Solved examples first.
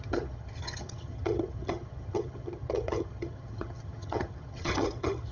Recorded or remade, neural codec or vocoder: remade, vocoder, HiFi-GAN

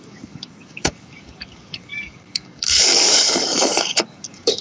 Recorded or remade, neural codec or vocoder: remade, codec, DAC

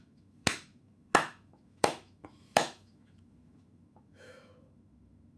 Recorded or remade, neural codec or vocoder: remade, autoencoder, DAC-VAE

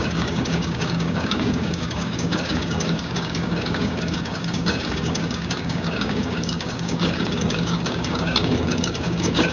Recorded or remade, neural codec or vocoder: remade, codec, DAC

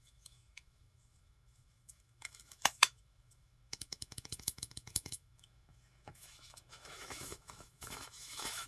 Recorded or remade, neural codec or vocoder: remade, autoencoder, DAC-VAE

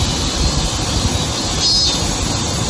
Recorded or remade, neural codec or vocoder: recorded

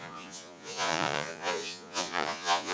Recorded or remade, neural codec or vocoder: remade, vocoder, Vocos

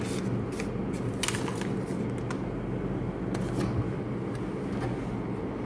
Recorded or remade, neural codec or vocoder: recorded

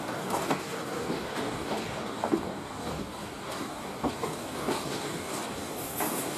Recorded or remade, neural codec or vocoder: remade, codec, DAC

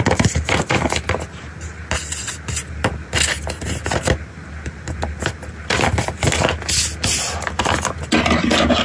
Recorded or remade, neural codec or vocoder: recorded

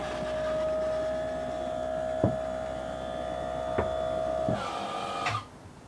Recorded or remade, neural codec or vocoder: recorded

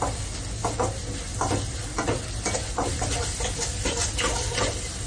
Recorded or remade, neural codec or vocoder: recorded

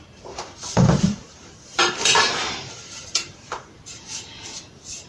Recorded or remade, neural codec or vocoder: remade, vocoder, BigVGAN v2